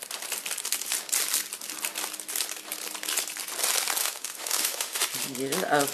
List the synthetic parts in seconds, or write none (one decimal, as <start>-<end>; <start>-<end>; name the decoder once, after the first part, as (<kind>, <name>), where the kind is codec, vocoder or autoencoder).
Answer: 4.0-5.0 (autoencoder, DAC-VAE)

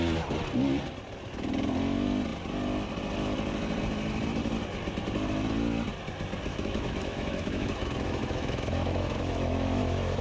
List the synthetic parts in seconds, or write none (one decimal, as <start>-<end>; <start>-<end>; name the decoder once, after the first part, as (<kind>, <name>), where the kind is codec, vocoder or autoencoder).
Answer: 6.5-10.2 (autoencoder, DAC-VAE)

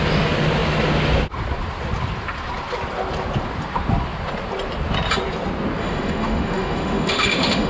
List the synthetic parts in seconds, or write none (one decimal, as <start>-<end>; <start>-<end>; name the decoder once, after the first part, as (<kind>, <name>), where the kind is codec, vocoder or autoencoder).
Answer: 5.8-7.7 (autoencoder, DAC-VAE)

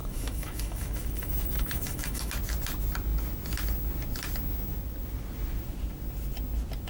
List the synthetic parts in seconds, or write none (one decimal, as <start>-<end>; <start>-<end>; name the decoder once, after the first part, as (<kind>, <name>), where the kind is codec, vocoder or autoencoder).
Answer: 0.0-2.3 (autoencoder, DAC-VAE)

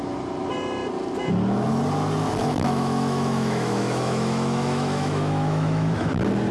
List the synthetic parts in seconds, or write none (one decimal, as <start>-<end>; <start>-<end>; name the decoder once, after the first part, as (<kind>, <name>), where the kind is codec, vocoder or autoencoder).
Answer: 2.4-6.1 (autoencoder, DAC-VAE)

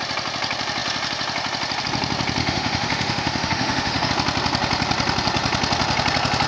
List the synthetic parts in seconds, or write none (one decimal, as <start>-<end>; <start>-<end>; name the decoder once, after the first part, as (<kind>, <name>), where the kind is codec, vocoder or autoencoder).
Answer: 2.4-4.1 (autoencoder, DAC-VAE)

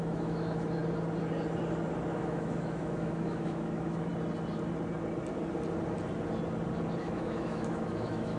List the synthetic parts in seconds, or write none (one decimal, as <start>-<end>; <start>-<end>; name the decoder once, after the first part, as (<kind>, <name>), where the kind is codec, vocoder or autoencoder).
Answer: 0.0-0.8 (autoencoder, DAC-VAE); 2.1-4.1; 7.0-8.4

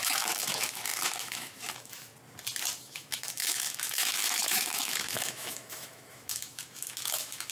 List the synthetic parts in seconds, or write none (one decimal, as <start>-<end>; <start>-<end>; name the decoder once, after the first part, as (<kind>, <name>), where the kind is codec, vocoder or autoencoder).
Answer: 0.0-2.1 (autoencoder, DAC-VAE); 2.8-7.5